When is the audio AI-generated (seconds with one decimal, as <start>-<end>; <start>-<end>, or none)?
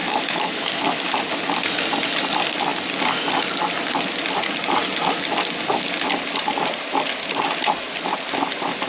0.0-1.2